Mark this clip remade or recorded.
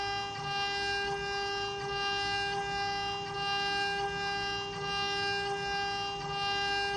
recorded